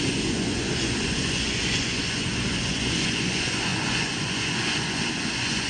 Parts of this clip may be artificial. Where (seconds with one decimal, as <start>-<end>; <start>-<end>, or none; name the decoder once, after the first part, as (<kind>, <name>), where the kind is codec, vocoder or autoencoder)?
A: 0.0-5.7 (vocoder, Vocos)